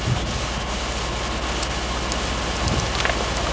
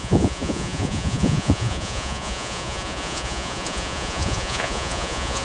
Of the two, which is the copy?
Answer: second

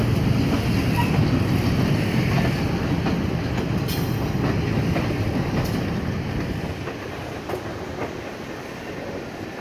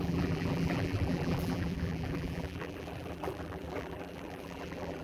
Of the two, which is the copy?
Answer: second